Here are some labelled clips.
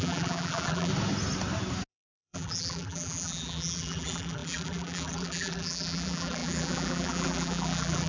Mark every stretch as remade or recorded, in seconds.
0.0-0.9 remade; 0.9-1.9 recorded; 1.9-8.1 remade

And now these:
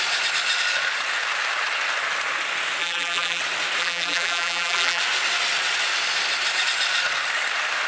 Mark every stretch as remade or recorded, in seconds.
0.0-2.8 recorded; 2.8-3.4 remade; 3.4-3.8 recorded; 3.8-5.0 remade; 5.0-7.9 recorded